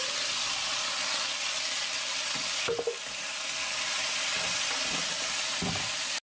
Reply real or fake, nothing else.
real